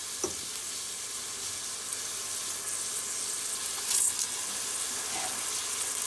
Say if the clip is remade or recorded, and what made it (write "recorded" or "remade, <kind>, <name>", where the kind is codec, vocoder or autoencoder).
recorded